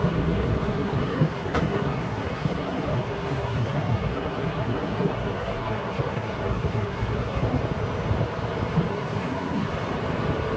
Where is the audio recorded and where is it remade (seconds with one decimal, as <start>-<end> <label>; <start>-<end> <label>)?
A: 0.0-7.6 remade; 7.6-8.9 recorded; 8.9-9.7 remade; 9.7-10.6 recorded